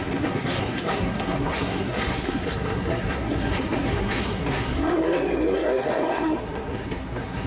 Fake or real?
fake